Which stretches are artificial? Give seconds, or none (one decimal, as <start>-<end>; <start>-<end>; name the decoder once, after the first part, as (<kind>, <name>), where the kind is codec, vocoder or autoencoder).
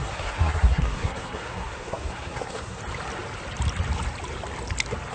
0.0-2.8 (codec, SNAC)